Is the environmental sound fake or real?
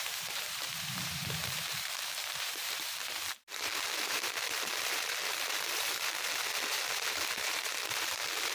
fake